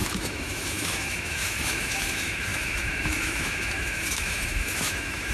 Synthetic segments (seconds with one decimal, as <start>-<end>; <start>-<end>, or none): 0.0-5.3

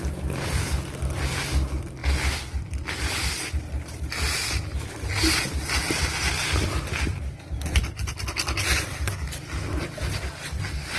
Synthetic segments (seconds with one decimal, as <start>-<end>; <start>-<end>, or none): none

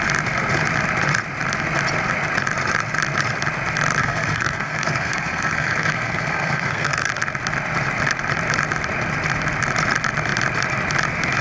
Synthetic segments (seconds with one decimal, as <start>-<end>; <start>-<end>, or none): 4.0-7.1

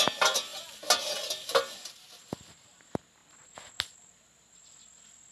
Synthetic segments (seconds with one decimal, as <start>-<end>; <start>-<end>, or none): none

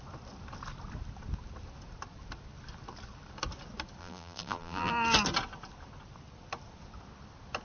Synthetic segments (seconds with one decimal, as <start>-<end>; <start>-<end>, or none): 4.0-4.9